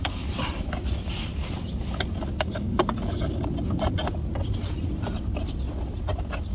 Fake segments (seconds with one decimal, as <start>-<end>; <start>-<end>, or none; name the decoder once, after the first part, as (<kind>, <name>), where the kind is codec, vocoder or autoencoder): 0.0-6.5 (vocoder, BigVGAN v2)